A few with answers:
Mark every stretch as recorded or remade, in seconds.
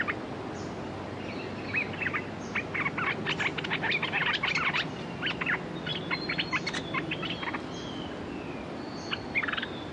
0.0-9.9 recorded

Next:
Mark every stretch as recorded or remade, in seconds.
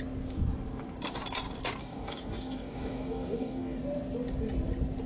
0.0-1.8 recorded; 1.8-3.8 remade; 3.8-5.1 recorded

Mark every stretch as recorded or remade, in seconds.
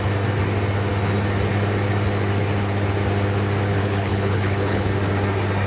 0.0-3.8 recorded; 3.8-4.9 remade; 4.9-5.7 recorded